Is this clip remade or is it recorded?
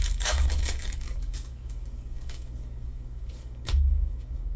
remade